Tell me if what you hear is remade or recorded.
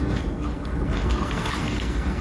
remade